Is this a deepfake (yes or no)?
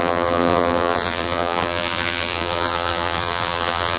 yes